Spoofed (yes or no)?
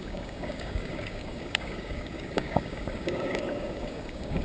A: yes